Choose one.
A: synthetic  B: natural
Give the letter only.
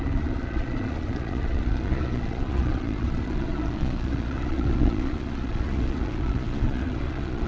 A